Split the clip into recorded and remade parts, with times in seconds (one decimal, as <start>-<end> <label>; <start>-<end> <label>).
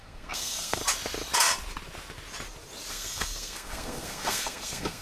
0.0-0.8 remade; 0.8-2.9 recorded; 2.9-5.0 remade